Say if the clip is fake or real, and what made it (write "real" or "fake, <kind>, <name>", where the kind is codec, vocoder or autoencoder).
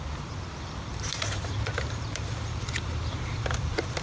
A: fake, vocoder, BigVGAN v2